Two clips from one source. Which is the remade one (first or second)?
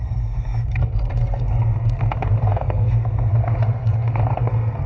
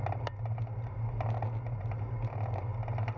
first